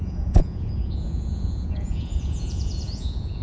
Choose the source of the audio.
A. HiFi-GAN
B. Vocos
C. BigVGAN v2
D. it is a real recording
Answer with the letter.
B